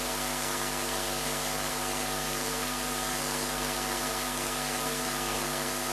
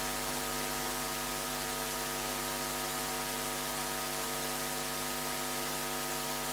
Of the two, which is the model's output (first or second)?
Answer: first